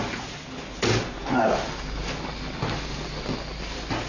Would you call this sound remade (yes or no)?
no